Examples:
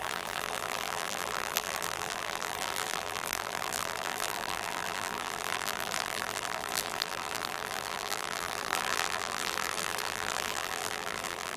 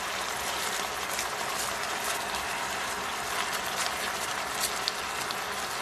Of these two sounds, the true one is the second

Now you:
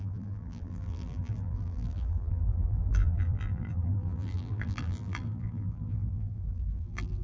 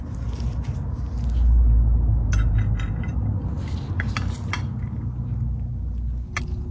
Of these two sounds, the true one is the second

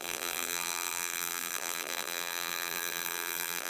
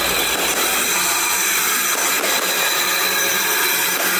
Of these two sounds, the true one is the second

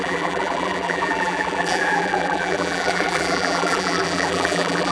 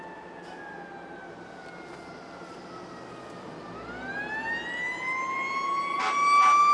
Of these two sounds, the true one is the second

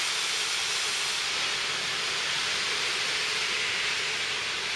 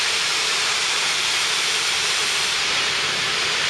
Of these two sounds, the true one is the first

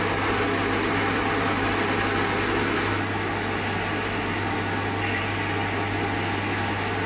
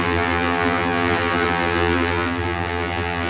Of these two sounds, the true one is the first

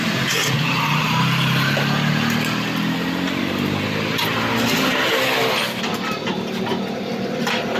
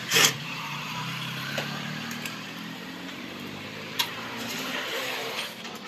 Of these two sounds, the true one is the first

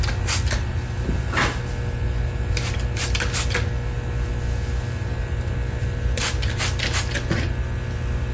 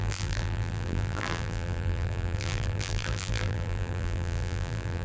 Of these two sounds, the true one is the first